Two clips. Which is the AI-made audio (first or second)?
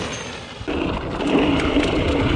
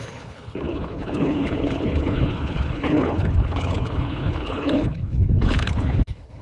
second